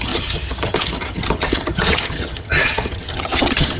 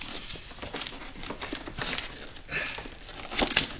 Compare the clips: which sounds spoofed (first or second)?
first